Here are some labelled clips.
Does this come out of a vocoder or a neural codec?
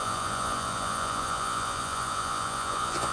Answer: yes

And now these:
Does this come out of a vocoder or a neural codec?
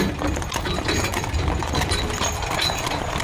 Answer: no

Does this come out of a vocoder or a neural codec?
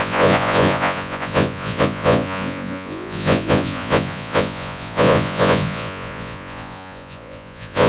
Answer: yes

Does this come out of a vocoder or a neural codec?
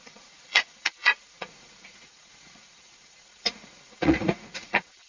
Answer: yes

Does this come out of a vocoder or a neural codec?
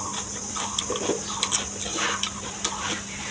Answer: no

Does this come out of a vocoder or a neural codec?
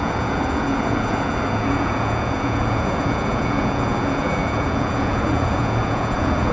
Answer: yes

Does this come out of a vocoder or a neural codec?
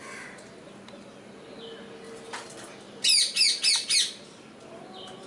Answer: no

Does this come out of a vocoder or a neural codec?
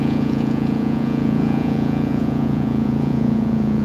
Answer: yes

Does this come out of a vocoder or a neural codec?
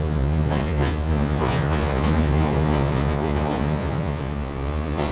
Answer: yes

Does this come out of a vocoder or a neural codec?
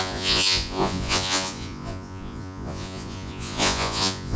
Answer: yes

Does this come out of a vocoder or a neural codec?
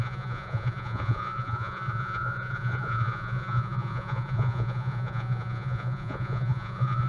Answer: yes